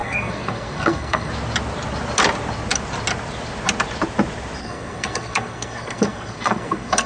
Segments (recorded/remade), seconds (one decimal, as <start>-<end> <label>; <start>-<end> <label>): 0.0-1.3 remade; 1.3-4.6 recorded; 4.6-7.1 remade